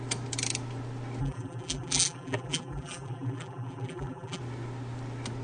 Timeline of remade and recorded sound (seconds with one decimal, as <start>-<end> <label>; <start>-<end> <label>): 0.0-1.2 recorded; 1.2-4.4 remade; 4.4-5.4 recorded